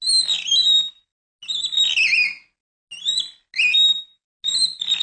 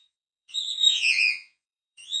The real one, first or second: first